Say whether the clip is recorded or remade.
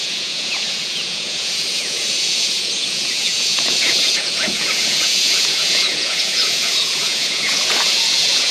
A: remade